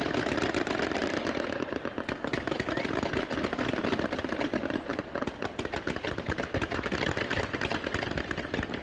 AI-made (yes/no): no